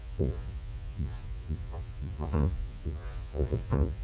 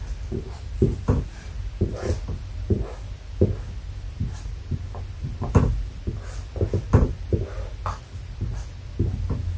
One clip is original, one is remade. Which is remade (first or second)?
first